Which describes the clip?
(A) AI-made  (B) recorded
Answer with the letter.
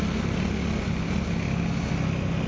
B